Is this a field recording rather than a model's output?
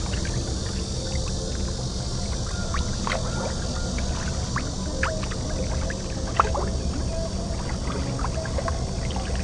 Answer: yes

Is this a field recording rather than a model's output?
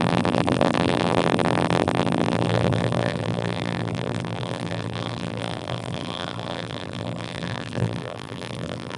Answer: no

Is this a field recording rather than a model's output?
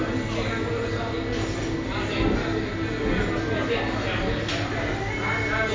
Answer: yes